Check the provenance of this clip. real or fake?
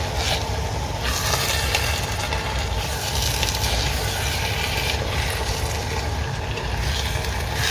real